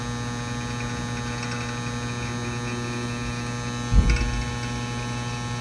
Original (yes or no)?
yes